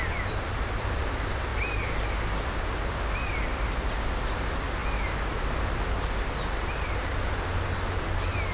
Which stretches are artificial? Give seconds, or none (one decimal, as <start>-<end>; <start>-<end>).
none